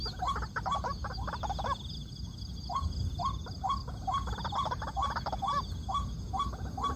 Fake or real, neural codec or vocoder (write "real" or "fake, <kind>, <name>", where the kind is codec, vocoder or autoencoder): real